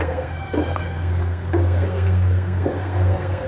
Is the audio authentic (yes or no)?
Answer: no